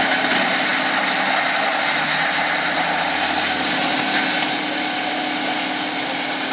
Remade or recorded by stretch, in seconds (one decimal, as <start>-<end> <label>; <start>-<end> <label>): 0.0-6.5 recorded